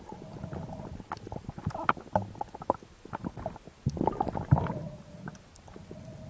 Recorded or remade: recorded